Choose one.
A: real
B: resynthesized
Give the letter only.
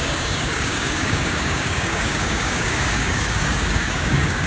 B